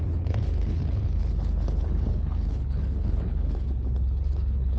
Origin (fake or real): fake